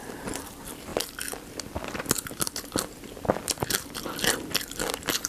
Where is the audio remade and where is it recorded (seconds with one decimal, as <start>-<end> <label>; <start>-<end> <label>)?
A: 0.0-5.3 recorded